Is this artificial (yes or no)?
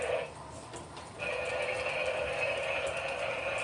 no